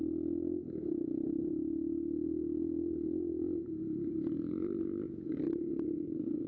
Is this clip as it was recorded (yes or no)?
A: yes